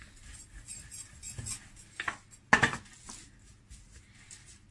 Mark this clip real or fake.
real